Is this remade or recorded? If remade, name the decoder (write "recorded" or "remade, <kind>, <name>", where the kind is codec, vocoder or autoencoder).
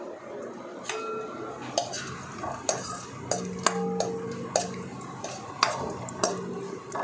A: recorded